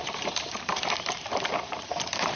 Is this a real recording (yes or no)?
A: no